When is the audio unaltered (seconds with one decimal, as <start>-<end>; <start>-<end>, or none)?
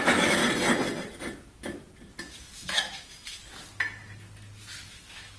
0.4-2.2; 3.4-4.9